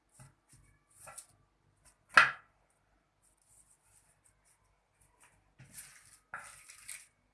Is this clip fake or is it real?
real